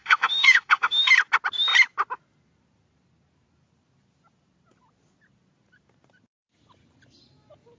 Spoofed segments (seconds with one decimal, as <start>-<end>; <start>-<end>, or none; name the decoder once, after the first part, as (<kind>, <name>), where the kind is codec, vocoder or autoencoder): 0.0-1.0 (autoencoder, DAC-VAE)